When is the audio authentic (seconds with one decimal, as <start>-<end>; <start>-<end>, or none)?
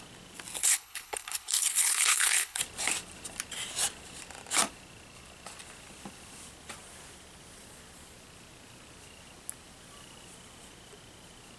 0.0-0.6; 2.6-11.6